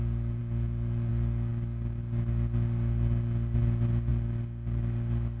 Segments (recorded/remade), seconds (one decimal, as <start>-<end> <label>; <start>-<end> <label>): 0.0-5.4 recorded

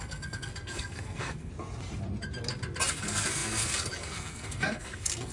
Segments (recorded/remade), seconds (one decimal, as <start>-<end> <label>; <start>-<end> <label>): 0.0-1.5 remade; 1.5-2.9 recorded; 2.9-5.3 remade

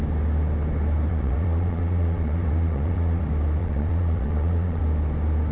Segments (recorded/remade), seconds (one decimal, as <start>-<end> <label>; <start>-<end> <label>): 0.0-1.1 recorded; 1.1-3.2 remade; 3.2-3.6 recorded; 3.6-4.8 remade; 4.8-5.5 recorded

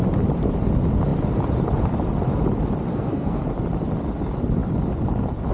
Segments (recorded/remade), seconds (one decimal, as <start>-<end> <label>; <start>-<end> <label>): 0.0-2.9 recorded; 2.9-3.4 remade; 3.4-5.5 recorded

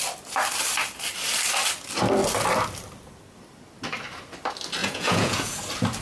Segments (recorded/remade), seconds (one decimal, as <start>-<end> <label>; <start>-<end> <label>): 0.0-4.8 recorded; 4.8-5.6 remade; 5.6-6.0 recorded

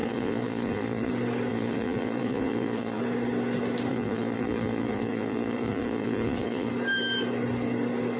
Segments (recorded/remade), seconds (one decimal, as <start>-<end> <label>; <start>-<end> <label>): 0.0-1.1 remade; 1.1-1.5 recorded; 1.5-3.0 remade; 3.0-3.9 recorded; 3.9-6.7 remade; 6.7-8.2 recorded

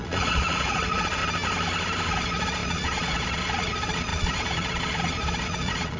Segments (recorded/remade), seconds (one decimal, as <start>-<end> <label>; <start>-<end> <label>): 0.0-1.2 remade; 1.2-2.1 recorded; 2.1-6.0 remade